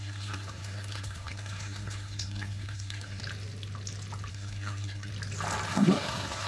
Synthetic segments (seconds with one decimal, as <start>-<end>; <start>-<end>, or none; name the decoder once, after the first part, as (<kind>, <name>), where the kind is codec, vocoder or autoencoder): 0.0-3.2 (codec, SNAC); 4.3-5.1; 5.7-6.5